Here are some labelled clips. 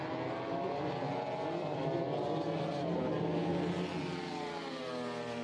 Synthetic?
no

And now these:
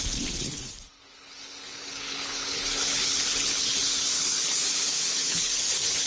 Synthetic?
yes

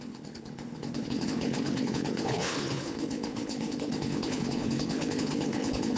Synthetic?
yes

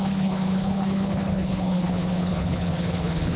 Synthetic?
yes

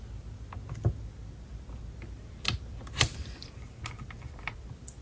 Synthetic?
no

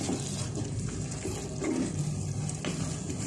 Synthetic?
no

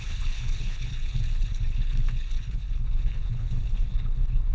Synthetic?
yes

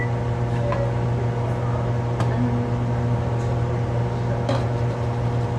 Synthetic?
no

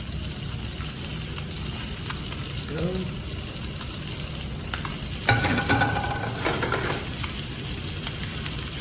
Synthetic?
no